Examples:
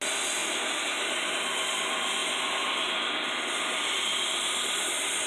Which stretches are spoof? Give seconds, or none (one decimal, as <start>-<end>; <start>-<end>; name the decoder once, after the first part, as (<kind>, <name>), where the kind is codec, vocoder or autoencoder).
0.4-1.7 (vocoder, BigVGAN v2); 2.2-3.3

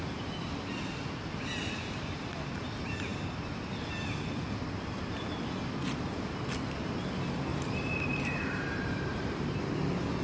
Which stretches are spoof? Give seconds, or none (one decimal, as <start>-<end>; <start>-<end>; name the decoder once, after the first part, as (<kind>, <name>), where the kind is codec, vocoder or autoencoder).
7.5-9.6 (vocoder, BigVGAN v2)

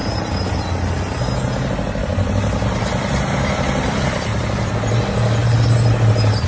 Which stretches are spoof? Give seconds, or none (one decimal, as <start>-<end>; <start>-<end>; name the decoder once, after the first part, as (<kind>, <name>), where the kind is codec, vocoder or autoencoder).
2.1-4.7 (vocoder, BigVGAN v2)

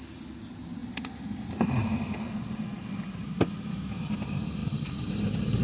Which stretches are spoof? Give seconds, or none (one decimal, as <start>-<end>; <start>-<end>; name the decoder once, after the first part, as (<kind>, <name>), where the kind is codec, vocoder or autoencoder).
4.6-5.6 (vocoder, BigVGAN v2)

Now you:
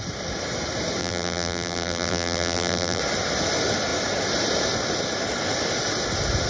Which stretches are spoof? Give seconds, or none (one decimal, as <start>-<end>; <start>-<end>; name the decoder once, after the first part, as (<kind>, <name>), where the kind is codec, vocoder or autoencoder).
1.0-3.0 (vocoder, BigVGAN v2)

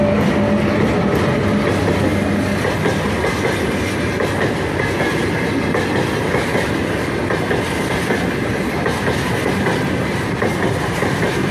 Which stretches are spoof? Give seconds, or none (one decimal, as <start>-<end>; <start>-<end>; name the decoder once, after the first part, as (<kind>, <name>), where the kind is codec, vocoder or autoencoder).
none

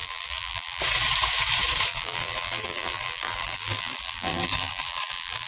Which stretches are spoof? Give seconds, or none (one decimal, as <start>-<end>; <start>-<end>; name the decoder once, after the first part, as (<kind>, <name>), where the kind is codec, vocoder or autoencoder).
0.0-0.8 (vocoder, BigVGAN v2); 1.9-5.5